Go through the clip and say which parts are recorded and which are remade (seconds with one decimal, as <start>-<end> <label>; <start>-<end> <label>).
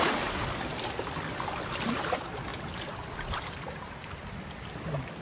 0.0-5.2 recorded